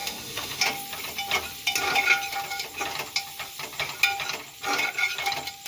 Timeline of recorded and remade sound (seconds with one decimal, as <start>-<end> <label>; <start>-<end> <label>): 0.0-0.6 remade; 0.6-5.7 recorded